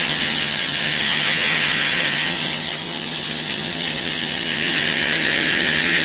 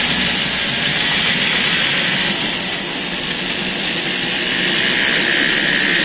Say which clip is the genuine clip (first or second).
second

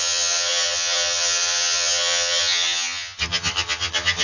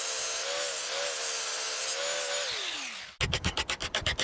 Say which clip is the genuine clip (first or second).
second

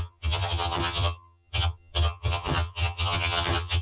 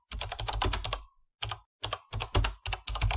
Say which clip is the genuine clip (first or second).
second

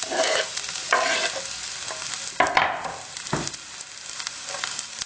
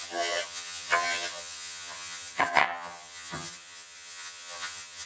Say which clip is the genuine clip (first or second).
first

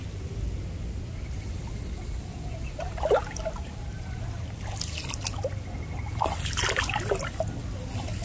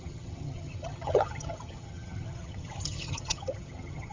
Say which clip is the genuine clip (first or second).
first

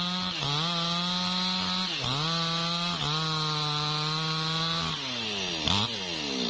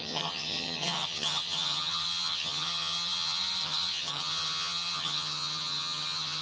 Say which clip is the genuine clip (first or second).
first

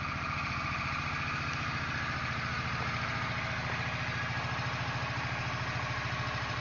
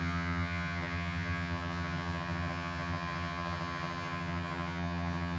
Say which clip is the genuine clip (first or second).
first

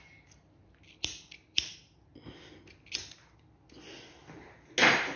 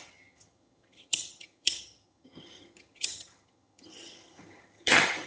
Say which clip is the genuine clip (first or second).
first